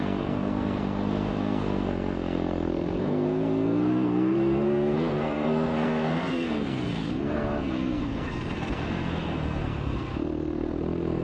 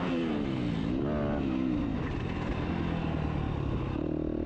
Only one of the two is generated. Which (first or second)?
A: first